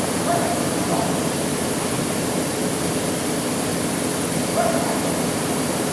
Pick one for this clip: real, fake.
fake